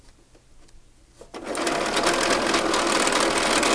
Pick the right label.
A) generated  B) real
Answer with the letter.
B